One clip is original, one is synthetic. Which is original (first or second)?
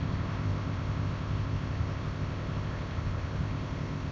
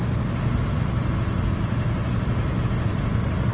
second